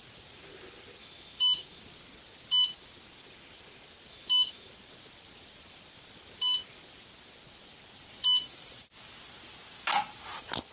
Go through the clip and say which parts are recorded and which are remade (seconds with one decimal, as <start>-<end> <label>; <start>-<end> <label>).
0.0-1.0 recorded; 1.0-1.8 remade; 1.8-4.1 recorded; 4.1-4.7 remade; 4.7-10.7 recorded